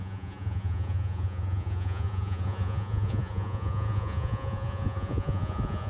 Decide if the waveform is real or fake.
fake